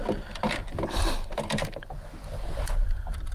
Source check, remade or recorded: recorded